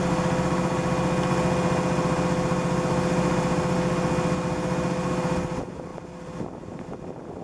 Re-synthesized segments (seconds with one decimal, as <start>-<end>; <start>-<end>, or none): none